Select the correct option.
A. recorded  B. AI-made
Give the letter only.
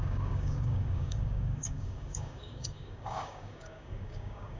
B